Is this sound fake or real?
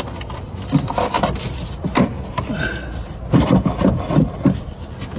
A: real